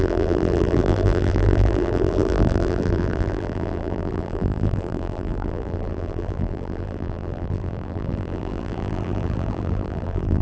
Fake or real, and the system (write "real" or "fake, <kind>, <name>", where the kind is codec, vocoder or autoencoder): fake, vocoder, BigVGAN v2